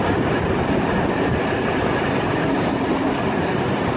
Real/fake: real